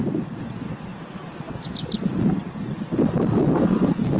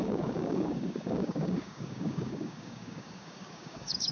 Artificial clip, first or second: second